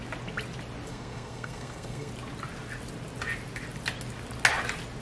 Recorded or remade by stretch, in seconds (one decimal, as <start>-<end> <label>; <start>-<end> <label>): 0.0-0.9 recorded; 0.9-2.1 remade; 2.1-5.0 recorded